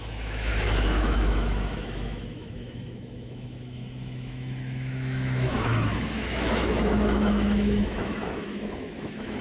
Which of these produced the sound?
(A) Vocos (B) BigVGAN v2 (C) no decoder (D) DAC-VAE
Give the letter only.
D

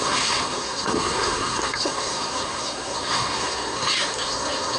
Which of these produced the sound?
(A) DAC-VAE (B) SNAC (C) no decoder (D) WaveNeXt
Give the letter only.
B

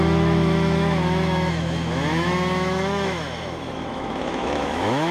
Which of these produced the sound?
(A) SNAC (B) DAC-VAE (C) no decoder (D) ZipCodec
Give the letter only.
B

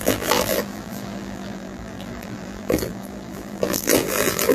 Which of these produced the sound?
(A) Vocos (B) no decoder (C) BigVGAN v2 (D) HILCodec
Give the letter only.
C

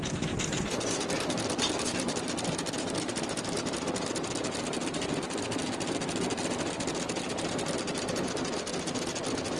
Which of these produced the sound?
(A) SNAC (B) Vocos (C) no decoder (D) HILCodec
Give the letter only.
C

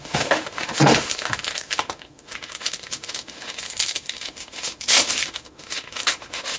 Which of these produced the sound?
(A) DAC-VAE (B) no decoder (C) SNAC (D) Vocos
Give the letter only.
A